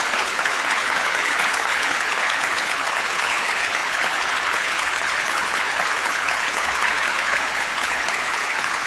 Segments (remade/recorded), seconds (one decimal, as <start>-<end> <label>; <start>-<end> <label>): 0.0-8.9 remade